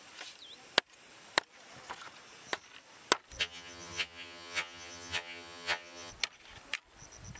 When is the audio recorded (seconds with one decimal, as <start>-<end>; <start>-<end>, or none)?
0.0-3.4; 6.1-7.4